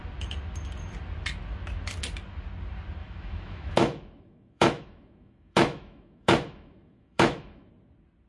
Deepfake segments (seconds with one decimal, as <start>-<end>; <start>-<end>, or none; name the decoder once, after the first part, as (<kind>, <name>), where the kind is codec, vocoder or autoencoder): 3.0-7.7 (autoencoder, DAC-VAE)